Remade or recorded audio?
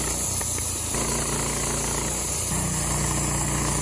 recorded